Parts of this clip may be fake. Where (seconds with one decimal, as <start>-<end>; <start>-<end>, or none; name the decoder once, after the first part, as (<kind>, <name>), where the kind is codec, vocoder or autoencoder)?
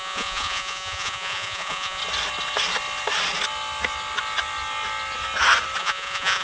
0.0-2.0 (vocoder, Vocos); 5.8-6.4